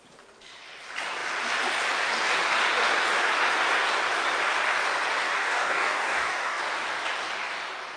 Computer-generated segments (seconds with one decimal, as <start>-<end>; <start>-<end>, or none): 5.2-6.6

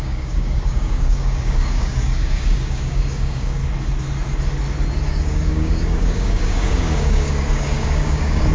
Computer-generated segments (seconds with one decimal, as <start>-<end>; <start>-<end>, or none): 0.0-3.6; 5.1-8.5

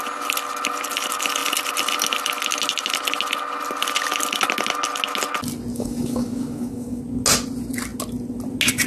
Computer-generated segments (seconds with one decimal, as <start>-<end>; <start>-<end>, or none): 5.7-7.0